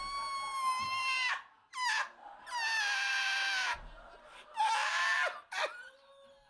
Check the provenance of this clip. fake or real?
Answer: real